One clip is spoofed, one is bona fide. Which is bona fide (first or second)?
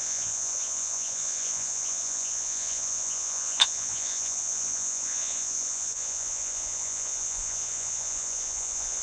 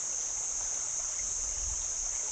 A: second